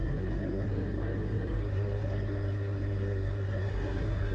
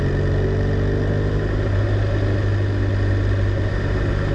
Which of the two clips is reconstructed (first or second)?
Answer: first